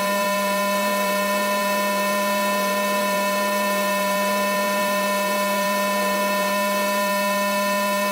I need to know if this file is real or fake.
fake